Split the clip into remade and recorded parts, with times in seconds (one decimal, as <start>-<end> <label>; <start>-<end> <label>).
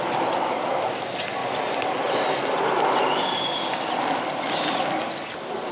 0.0-5.7 recorded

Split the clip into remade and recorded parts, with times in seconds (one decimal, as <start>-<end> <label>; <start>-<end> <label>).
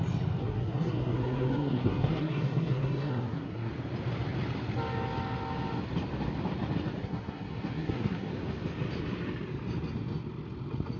0.0-0.4 recorded; 0.4-3.7 remade; 3.7-7.0 recorded; 7.0-8.3 remade; 8.3-11.0 recorded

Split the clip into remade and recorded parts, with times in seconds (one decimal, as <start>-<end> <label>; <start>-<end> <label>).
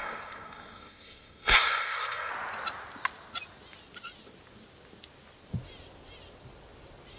0.0-2.3 remade; 2.3-7.2 recorded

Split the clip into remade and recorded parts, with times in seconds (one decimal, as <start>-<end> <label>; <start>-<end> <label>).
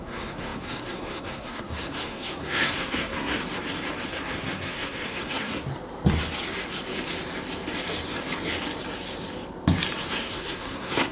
0.0-3.4 remade; 3.4-4.1 recorded; 4.1-5.7 remade; 5.7-10.1 recorded; 10.1-11.1 remade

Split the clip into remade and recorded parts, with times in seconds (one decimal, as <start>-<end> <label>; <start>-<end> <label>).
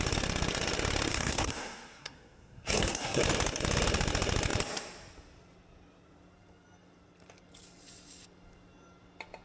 0.0-1.1 recorded; 1.1-3.2 remade; 3.2-9.4 recorded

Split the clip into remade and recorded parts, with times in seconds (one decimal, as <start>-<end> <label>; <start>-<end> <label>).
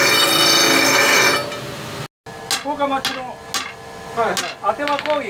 0.0-5.3 recorded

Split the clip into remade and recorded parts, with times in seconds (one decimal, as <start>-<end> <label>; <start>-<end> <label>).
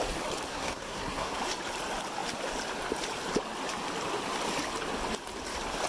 0.0-0.5 recorded; 0.5-1.4 remade; 1.4-5.9 recorded